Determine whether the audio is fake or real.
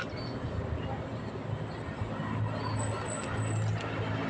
real